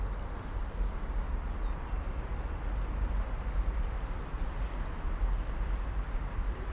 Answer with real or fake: real